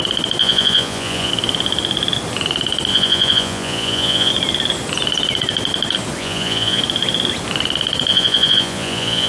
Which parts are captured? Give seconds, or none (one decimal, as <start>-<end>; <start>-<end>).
0.0-0.4; 1.3-2.9; 4.3-6.2; 6.8-8.1